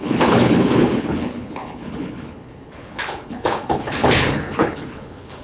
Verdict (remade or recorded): remade